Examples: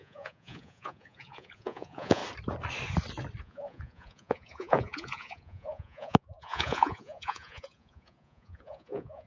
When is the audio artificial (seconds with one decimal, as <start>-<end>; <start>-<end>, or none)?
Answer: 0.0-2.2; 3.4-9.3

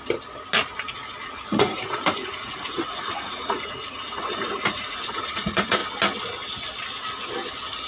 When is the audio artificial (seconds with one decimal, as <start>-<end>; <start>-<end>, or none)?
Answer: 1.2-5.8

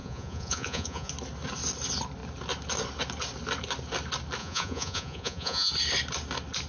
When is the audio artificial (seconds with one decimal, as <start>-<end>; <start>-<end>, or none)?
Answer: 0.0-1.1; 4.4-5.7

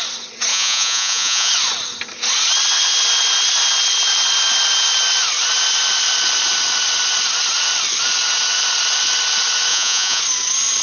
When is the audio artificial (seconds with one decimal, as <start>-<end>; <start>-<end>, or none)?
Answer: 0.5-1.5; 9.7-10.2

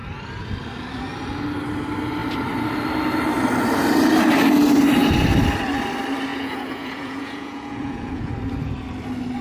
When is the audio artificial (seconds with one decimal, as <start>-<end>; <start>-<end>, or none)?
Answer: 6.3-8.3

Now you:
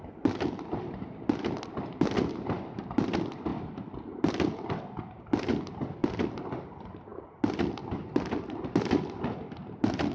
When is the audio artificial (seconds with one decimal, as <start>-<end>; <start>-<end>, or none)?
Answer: none

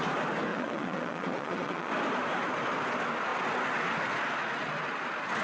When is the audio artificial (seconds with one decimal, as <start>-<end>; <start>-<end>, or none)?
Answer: 0.5-1.9

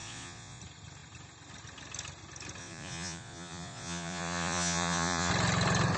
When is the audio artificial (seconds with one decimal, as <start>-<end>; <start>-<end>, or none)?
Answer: 0.0-0.6; 2.6-5.3